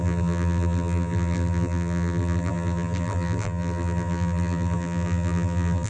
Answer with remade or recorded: remade